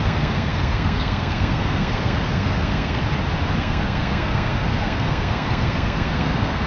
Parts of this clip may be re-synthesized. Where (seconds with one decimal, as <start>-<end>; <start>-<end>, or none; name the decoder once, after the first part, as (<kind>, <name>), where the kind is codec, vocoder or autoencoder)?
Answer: 0.0-3.0 (codec, SNAC); 3.6-6.7